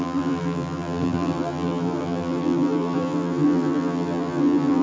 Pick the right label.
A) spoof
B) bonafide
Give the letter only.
A